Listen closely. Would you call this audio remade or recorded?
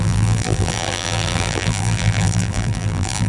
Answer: remade